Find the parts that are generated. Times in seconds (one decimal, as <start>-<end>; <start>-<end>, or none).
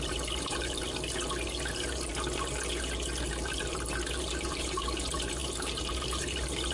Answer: 0.0-2.1; 3.2-6.7